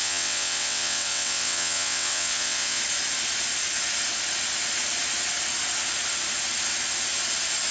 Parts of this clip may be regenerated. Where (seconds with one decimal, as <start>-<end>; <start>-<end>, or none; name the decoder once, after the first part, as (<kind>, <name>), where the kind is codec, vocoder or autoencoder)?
0.0-2.8 (vocoder, WaveNeXt)